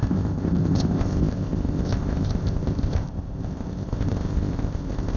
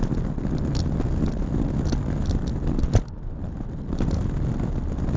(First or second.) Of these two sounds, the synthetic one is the first